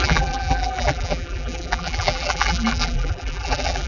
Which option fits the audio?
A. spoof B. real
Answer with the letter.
A